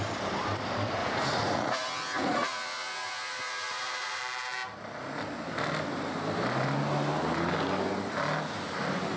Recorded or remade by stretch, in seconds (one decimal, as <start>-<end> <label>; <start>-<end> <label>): 0.0-1.0 recorded; 1.0-4.2 remade; 4.2-9.2 recorded